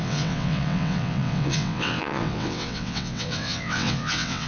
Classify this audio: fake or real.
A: fake